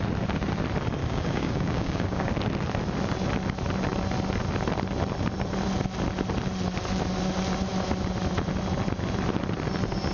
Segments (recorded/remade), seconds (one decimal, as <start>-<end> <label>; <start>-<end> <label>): 0.0-1.0 recorded; 1.0-2.3 remade; 2.3-10.1 recorded